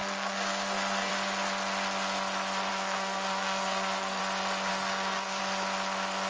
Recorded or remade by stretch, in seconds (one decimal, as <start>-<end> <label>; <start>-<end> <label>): 0.0-1.1 remade; 1.1-2.7 recorded; 2.7-4.2 remade; 4.2-4.7 recorded; 4.7-5.4 remade; 5.4-6.3 recorded